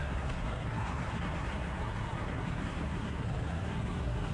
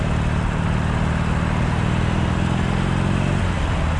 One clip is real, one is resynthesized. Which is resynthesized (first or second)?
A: first